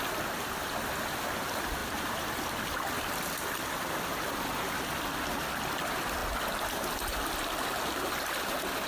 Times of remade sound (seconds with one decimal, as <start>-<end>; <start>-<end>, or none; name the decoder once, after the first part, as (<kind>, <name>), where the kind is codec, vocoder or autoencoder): 1.8-5.0 (vocoder, BigVGAN v2)